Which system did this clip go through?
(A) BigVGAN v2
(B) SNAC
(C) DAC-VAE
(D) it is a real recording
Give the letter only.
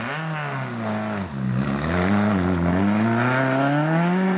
D